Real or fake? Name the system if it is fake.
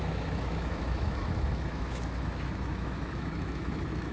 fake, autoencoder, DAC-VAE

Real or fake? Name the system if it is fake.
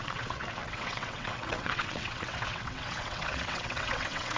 fake, vocoder, WaveNeXt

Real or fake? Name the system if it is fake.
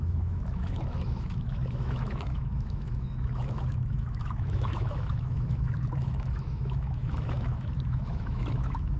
fake, autoencoder, DAC-VAE